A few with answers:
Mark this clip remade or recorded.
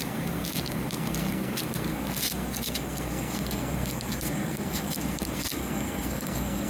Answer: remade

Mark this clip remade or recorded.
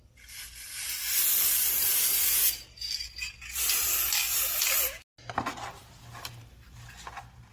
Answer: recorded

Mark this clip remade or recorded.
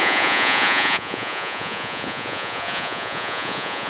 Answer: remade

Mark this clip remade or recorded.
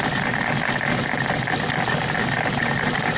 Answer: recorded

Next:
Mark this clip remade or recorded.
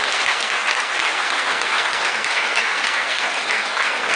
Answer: remade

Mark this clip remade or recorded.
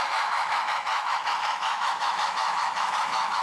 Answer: remade